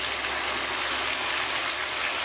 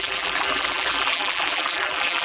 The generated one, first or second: second